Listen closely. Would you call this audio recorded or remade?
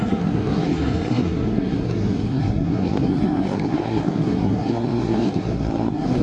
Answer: remade